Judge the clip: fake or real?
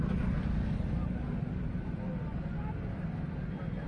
real